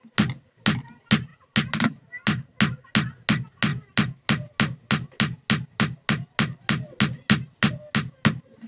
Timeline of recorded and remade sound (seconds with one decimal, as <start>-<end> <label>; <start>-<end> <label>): 0.0-8.7 recorded